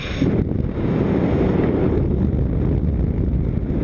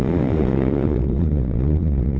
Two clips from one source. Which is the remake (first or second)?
second